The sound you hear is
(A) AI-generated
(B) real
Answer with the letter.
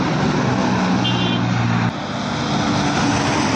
B